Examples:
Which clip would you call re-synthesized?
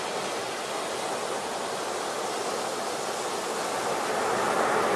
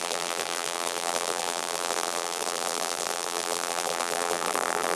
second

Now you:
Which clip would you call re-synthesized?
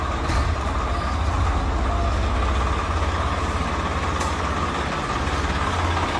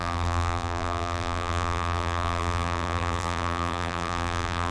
second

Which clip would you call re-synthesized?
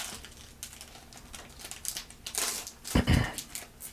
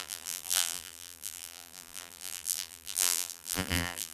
second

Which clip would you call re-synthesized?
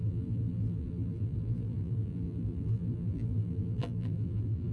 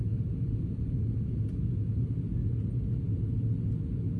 first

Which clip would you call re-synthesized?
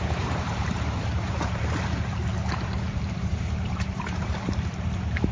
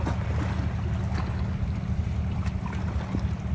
first